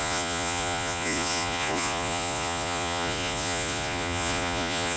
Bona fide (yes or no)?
no